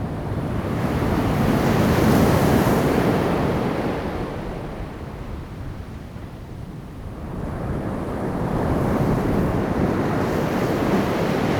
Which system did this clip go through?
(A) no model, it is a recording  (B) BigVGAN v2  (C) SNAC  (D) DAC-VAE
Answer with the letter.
B